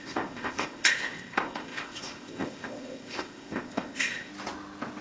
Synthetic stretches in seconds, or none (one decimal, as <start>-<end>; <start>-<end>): 0.0-4.3